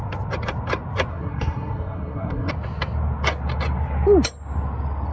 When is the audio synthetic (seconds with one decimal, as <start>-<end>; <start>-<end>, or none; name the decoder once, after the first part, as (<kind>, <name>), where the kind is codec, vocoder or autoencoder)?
1.1-2.5 (codec, SNAC)